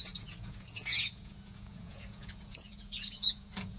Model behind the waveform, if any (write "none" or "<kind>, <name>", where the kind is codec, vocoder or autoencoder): vocoder, Vocos